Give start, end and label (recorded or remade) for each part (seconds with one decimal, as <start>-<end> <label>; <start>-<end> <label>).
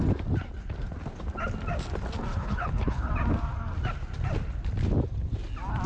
0.0-2.3 recorded; 2.3-3.1 remade; 3.1-5.9 recorded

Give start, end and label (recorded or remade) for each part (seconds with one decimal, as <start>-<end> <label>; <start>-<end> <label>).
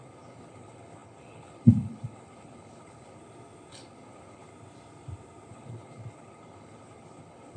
0.0-3.2 remade; 3.2-3.7 recorded; 3.7-4.5 remade; 4.5-5.5 recorded; 5.5-7.6 remade